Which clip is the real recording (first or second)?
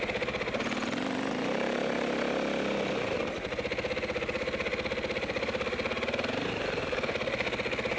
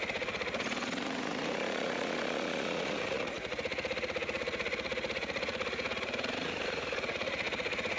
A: first